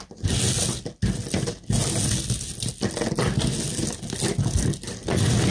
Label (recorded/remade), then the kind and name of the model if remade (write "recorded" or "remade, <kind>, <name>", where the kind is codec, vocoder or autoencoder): recorded